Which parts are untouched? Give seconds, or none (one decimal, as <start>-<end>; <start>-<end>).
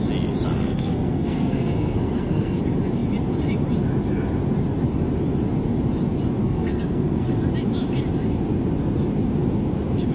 0.0-0.6; 2.6-6.4; 7.5-10.1